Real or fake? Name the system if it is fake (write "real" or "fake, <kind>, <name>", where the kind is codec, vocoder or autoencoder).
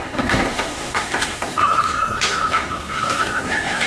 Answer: fake, codec, SNAC